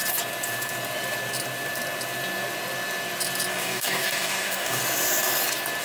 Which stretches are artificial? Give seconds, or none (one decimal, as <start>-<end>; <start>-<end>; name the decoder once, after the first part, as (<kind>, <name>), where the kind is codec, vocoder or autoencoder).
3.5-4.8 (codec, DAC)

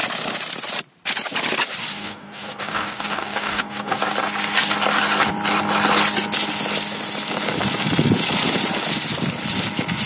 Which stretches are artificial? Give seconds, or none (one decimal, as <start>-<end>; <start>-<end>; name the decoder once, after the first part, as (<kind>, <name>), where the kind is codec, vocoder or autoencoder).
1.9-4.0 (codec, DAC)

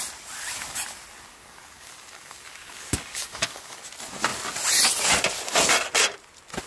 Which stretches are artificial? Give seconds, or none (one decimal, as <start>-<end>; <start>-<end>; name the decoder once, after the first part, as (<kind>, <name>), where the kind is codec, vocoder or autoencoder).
1.3-3.8 (codec, DAC)